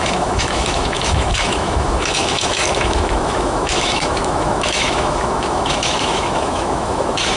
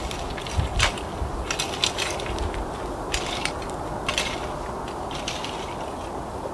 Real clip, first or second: second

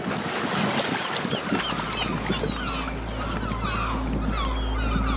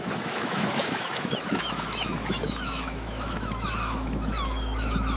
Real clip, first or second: first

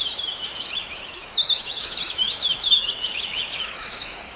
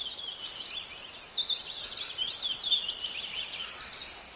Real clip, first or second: second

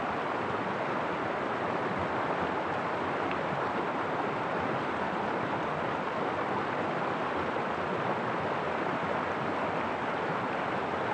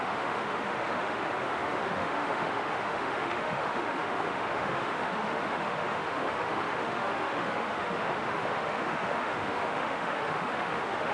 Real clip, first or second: first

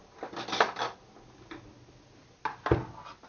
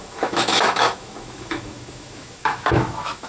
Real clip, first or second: first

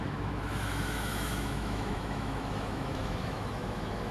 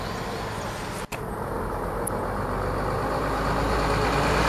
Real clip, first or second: second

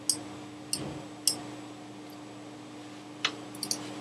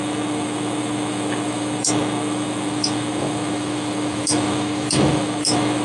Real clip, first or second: first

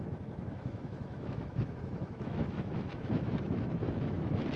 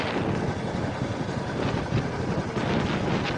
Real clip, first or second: second